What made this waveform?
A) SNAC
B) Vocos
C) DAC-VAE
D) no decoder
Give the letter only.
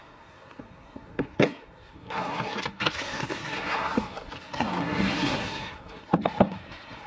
A